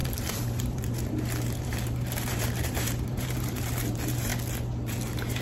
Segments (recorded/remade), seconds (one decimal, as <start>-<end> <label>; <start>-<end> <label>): 0.0-4.3 remade; 4.3-4.9 recorded; 4.9-5.4 remade